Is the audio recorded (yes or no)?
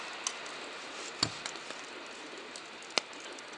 yes